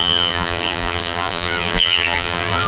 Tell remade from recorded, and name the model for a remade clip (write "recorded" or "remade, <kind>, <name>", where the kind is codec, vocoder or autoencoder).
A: remade, vocoder, BigVGAN v2